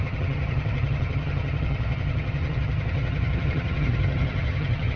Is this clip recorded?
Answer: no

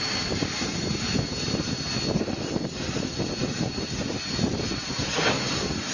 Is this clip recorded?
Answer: yes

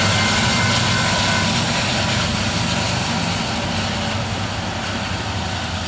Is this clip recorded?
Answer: yes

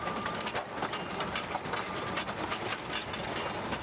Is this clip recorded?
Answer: yes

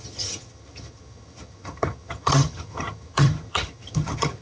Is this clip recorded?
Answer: no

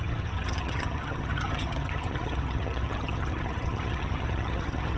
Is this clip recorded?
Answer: no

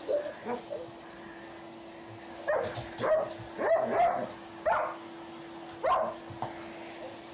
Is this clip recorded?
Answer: yes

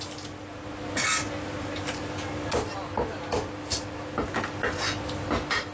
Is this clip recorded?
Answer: yes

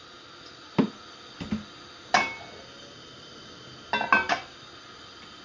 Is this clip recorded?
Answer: yes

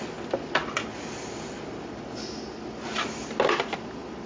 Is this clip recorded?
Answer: yes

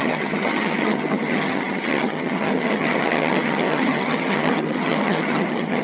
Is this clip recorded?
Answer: no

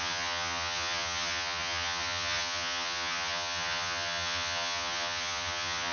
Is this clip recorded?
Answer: no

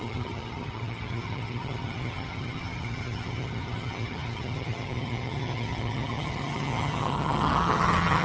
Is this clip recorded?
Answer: no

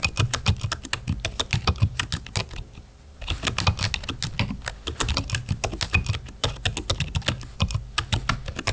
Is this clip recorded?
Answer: yes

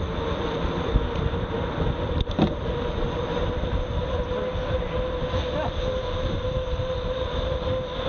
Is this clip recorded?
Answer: yes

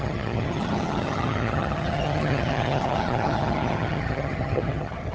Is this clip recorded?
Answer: no